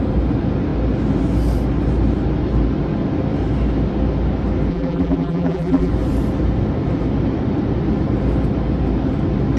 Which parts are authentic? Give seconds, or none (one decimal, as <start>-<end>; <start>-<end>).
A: 0.0-4.7; 5.9-9.6

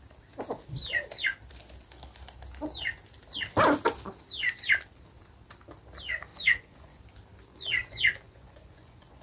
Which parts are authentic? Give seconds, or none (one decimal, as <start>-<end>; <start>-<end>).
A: 0.0-6.3; 7.0-7.5

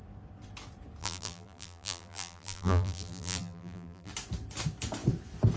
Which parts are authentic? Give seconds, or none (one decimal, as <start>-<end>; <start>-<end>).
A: 0.0-1.0; 4.1-5.6